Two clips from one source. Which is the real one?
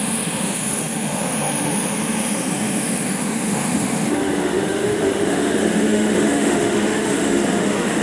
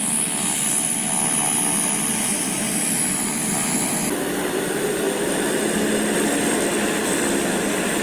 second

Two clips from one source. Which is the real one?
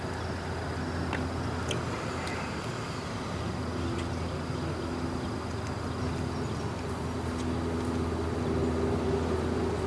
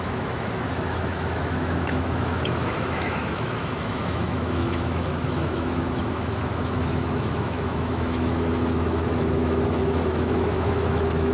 first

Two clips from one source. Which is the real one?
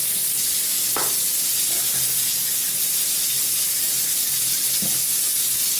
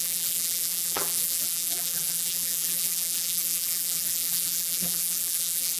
first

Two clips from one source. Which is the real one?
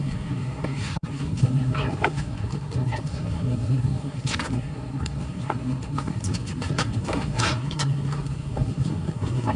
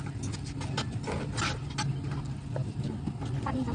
second